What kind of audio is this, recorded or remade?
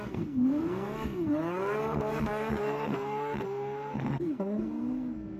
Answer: remade